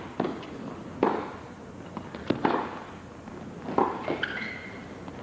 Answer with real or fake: real